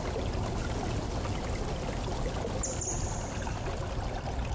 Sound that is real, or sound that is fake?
real